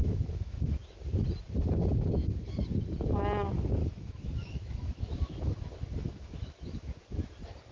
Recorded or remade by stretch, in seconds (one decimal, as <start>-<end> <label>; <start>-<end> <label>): 0.0-0.7 remade; 0.7-3.8 recorded; 3.8-7.0 remade; 7.0-7.7 recorded